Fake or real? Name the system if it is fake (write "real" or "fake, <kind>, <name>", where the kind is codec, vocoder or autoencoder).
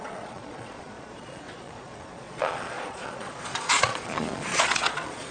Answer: fake, vocoder, Vocos